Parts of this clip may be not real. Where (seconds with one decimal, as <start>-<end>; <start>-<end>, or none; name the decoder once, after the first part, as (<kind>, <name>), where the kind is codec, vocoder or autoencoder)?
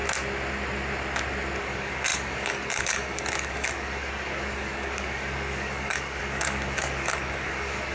1.6-7.9 (codec, DAC)